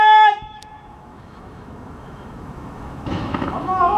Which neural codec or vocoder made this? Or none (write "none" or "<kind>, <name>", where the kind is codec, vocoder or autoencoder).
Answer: autoencoder, DAC-VAE